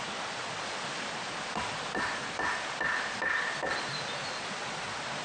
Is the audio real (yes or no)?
yes